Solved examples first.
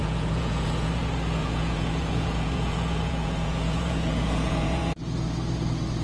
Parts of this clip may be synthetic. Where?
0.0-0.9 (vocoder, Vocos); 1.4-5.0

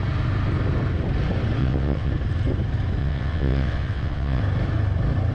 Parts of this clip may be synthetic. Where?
1.6-2.1 (vocoder, WaveNeXt); 3.0-4.4

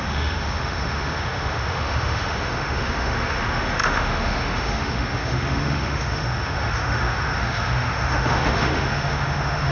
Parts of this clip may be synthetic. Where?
0.0-9.7 (autoencoder, DAC-VAE)

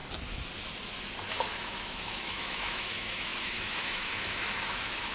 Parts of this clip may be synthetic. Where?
1.3-5.1 (autoencoder, DAC-VAE)

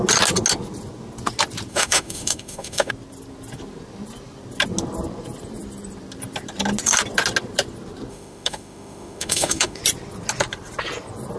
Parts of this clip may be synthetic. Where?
1.7-2.9 (autoencoder, DAC-VAE); 8.1-9.8

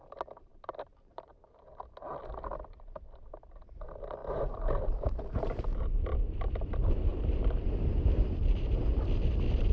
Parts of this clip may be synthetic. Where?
0.5-1.2 (vocoder, BigVGAN v2); 4.2-6.0; 7.1-8.1

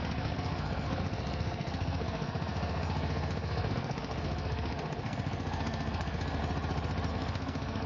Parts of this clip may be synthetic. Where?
0.0-6.4 (codec, SNAC); 7.1-7.9

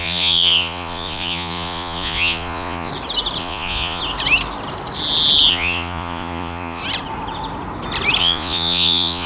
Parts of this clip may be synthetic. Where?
0.0-2.9 (vocoder, Vocos); 3.4-4.0; 5.5-6.8; 8.2-9.3